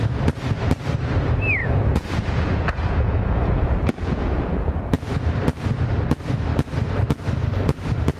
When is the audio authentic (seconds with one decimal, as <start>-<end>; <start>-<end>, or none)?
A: 0.0-1.6; 4.8-8.2